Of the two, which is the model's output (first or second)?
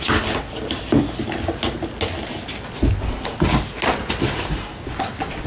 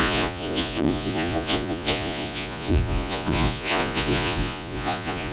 second